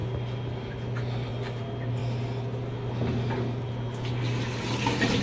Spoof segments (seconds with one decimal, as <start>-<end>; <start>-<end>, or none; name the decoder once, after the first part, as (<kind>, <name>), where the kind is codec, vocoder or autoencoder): none